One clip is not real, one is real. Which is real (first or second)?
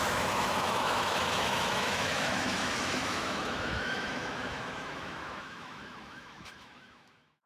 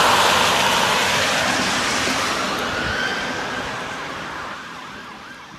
second